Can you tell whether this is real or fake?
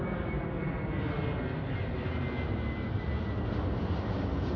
real